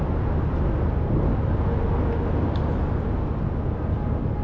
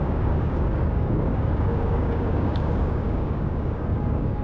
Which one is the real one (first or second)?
first